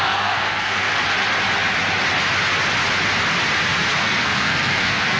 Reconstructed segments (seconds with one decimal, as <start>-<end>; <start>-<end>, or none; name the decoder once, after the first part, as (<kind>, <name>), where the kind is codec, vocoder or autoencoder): 0.0-0.9 (codec, SNAC); 4.0-5.2